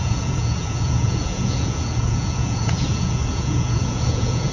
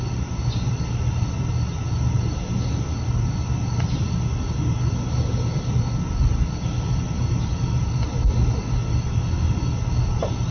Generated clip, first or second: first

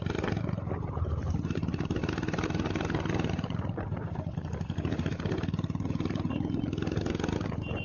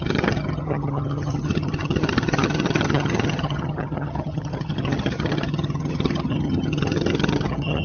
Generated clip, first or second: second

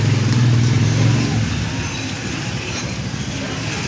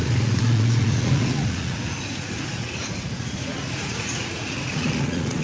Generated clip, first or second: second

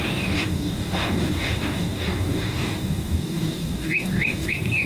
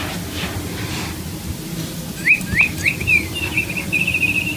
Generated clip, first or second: first